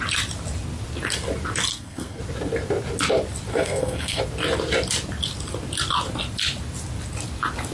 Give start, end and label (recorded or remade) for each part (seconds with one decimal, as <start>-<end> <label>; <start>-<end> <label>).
0.0-1.7 recorded; 1.7-2.2 remade; 2.2-3.5 recorded; 3.5-4.2 remade; 4.2-7.7 recorded